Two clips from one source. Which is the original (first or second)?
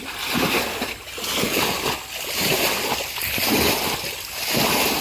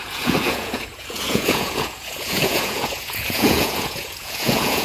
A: first